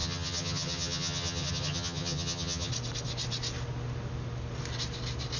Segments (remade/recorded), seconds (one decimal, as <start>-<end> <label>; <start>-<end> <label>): 0.0-2.7 remade; 2.7-5.4 recorded